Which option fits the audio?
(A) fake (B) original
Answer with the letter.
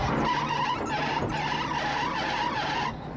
B